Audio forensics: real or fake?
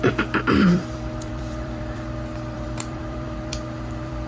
fake